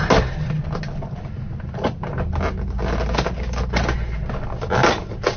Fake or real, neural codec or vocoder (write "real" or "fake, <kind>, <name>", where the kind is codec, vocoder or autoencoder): real